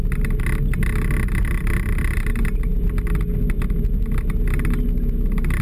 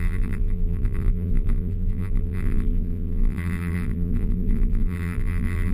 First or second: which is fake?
second